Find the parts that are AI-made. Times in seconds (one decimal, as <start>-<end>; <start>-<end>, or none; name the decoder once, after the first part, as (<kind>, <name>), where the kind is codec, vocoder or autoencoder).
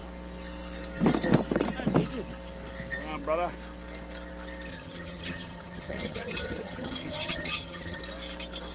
4.7-8.0 (vocoder, HiFi-GAN)